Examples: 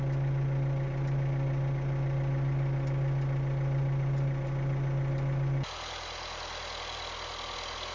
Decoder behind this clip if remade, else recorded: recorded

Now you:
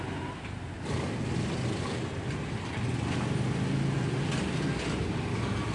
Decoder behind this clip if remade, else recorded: recorded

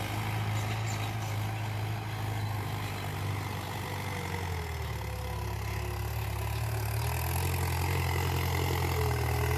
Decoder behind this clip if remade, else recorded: recorded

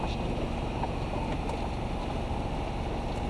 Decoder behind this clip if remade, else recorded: recorded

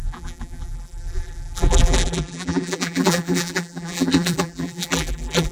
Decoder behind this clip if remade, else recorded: remade, vocoder, BigVGAN v2